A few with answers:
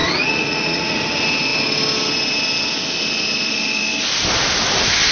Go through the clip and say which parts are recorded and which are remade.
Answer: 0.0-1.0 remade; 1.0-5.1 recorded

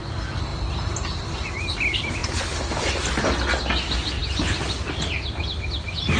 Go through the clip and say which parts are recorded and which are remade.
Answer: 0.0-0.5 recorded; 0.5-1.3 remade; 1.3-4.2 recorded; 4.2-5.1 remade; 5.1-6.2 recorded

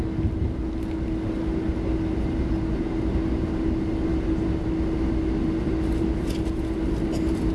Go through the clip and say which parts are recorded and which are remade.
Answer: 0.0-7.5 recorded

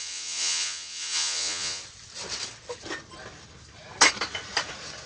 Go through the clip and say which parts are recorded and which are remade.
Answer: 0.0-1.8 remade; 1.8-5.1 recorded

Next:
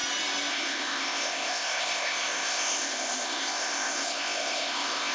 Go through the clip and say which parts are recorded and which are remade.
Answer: 0.0-0.5 recorded; 0.5-5.1 remade